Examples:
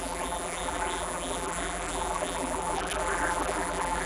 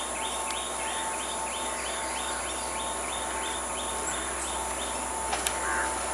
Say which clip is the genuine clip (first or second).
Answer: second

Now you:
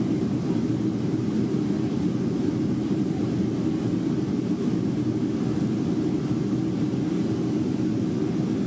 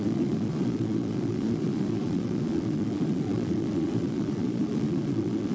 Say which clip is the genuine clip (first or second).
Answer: first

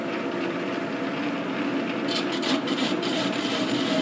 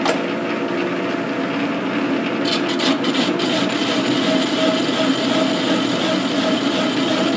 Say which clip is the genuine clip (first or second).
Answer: second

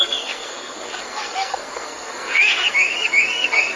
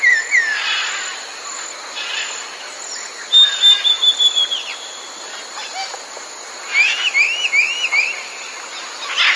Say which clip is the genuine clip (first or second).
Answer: second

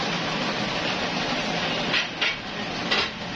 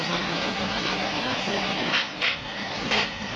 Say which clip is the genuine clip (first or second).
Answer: first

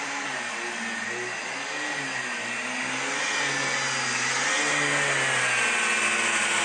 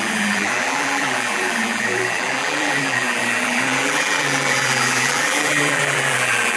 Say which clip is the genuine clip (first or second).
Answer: first